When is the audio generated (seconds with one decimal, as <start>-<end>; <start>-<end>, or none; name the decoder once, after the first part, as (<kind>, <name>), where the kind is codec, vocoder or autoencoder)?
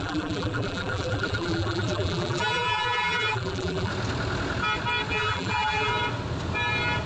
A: 0.0-3.9 (vocoder, BigVGAN v2); 5.1-5.9